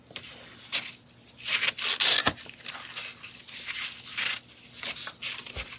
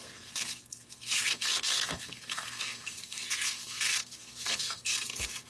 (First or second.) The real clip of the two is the first